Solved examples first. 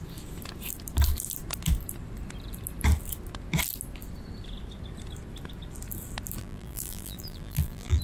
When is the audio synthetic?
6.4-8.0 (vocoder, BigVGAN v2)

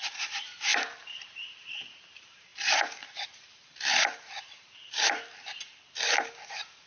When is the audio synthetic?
0.0-6.9 (vocoder, BigVGAN v2)

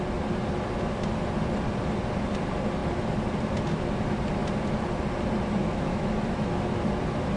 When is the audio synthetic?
5.6-6.5 (autoencoder, DAC-VAE)

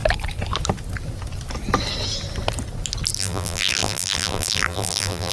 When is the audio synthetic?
3.2-5.3 (vocoder, BigVGAN v2)

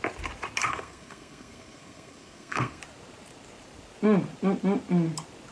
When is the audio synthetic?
0.7-2.8 (codec, SNAC)